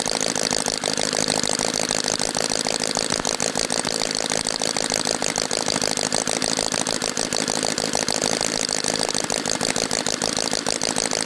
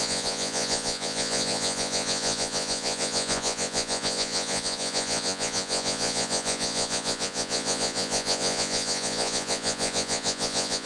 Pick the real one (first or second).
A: first